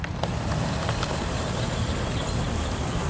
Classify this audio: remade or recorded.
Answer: recorded